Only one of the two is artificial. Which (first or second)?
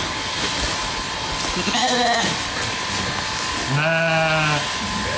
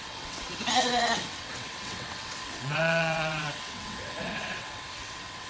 second